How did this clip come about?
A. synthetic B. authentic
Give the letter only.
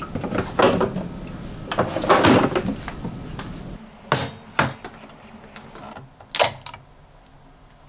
B